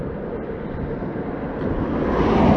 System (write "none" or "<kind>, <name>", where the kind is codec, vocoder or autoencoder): none